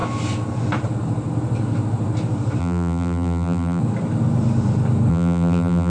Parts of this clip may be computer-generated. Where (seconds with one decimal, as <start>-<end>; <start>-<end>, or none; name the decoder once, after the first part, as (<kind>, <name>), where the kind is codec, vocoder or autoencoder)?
2.6-3.8 (vocoder, BigVGAN v2); 5.1-5.9